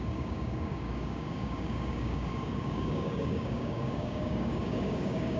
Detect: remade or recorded remade